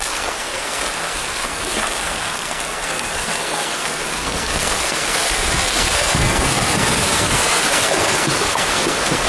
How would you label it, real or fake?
fake